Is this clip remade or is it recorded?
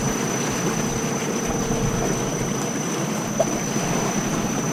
recorded